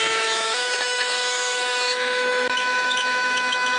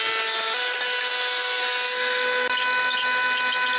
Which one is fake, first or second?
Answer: first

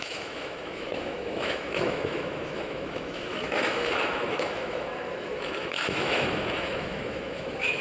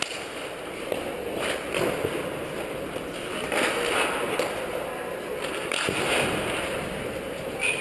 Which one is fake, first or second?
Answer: first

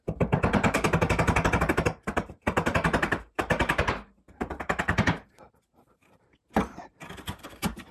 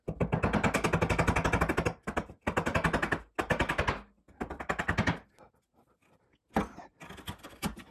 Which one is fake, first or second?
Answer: first